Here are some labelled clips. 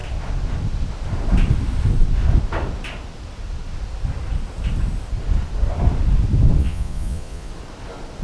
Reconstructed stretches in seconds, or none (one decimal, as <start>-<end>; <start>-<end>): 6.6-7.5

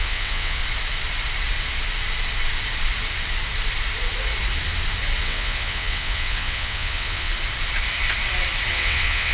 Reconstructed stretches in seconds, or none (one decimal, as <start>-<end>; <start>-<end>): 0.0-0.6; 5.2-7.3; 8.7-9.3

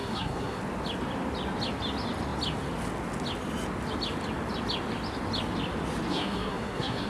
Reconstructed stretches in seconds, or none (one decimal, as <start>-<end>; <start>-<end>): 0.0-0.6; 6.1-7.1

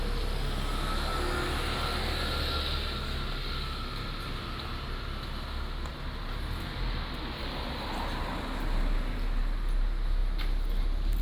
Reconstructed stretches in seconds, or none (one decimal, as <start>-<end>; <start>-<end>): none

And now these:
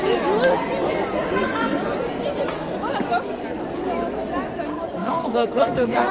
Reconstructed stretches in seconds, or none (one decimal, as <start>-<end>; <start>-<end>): 5.0-6.1

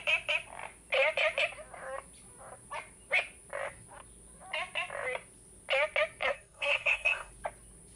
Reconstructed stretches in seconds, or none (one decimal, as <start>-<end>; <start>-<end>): 6.2-7.3